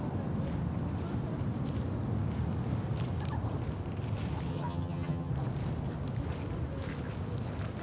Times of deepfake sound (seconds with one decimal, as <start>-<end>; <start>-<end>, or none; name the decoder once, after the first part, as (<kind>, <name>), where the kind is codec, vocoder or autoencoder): 4.5-5.3 (vocoder, HiFi-GAN)